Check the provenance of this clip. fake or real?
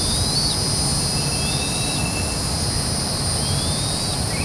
real